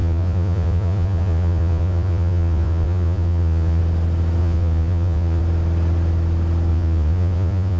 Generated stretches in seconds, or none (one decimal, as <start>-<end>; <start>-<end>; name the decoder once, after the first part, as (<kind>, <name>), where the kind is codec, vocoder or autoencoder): 0.0-3.8 (vocoder, Vocos); 4.4-5.4; 6.7-7.8